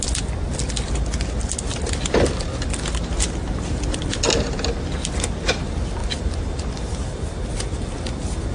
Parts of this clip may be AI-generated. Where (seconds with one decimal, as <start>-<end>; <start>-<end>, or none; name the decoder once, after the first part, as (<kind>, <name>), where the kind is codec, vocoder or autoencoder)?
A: none